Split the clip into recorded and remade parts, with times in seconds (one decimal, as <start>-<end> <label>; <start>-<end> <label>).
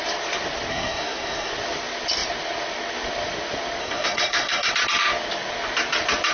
0.0-0.7 recorded; 0.7-1.5 remade; 1.5-3.8 recorded; 3.8-4.7 remade; 4.7-6.3 recorded